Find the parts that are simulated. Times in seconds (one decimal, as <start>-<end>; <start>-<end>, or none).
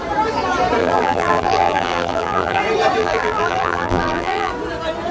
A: 0.8-2.6; 3.0-4.5